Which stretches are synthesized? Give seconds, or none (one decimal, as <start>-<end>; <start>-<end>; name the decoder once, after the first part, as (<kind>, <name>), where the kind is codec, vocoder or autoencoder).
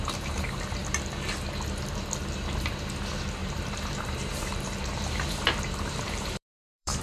0.0-0.8 (vocoder, BigVGAN v2); 3.4-7.0